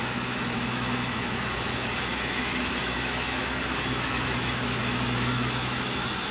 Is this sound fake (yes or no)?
yes